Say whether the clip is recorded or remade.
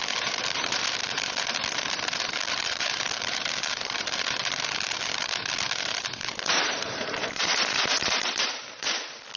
remade